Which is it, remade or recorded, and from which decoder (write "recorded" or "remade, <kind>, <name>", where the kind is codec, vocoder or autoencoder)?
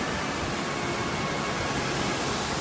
remade, vocoder, BigVGAN v2